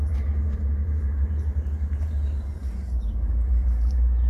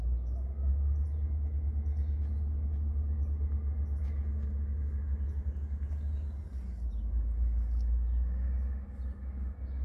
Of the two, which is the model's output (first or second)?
first